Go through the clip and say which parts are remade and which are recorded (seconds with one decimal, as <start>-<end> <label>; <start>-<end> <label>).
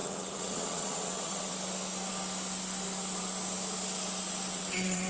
0.0-1.5 remade; 1.5-4.5 recorded; 4.5-5.1 remade